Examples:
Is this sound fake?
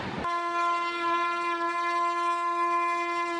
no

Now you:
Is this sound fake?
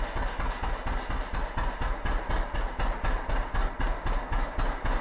no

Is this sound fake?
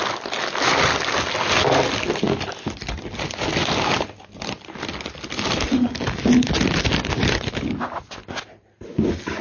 no